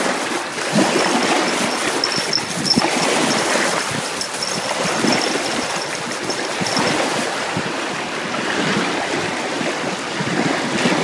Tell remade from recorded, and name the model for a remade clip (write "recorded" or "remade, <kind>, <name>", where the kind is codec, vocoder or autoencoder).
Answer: recorded